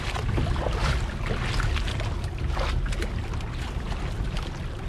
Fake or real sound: real